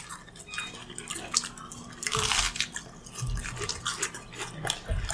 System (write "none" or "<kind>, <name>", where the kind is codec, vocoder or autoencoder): none